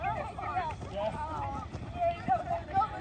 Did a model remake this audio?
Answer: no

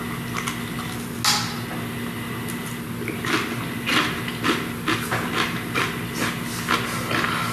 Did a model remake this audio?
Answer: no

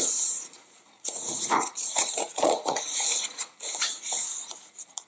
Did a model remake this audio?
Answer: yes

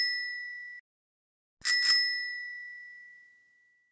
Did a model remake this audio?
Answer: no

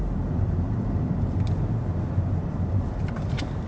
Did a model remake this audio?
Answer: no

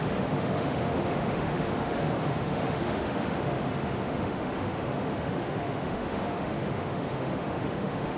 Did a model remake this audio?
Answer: yes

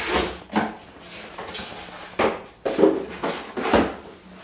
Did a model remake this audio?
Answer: no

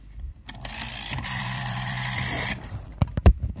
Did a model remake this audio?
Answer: yes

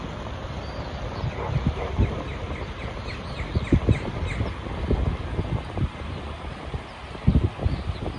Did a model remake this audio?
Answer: no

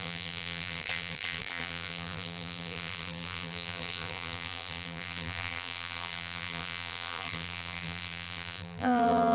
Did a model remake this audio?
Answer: yes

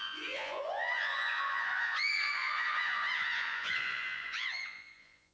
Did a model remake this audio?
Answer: yes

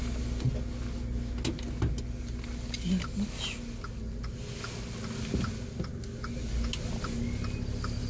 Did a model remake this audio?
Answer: no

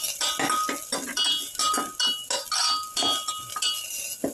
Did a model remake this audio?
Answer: no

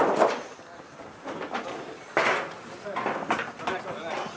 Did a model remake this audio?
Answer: no